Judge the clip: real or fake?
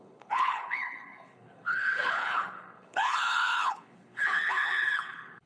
fake